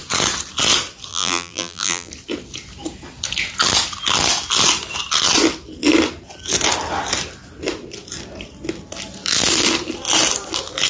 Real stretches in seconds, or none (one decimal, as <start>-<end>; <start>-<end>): 0.0-1.1; 2.1-10.9